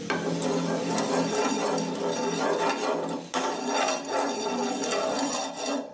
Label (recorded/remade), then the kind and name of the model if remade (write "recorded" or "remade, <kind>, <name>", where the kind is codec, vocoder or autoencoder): recorded